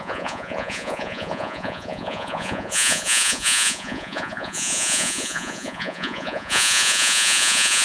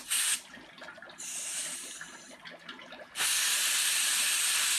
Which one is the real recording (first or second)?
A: second